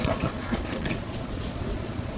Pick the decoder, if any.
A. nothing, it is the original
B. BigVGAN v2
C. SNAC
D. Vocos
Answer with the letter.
D